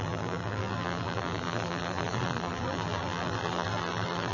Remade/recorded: remade